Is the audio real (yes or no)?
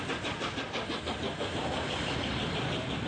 yes